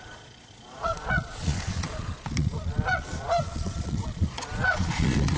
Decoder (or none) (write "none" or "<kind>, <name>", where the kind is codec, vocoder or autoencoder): vocoder, Vocos